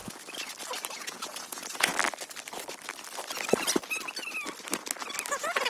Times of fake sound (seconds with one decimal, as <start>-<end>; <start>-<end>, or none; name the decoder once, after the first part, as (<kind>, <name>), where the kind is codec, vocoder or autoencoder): 0.9-1.9 (vocoder, Vocos); 5.3-5.7